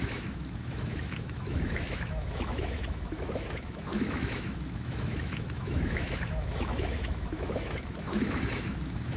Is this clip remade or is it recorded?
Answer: remade